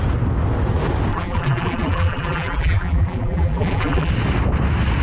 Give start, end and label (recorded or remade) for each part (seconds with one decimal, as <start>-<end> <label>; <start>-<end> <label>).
0.0-1.1 recorded; 1.1-4.1 remade; 4.1-5.0 recorded